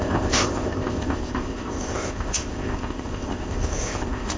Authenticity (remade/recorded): remade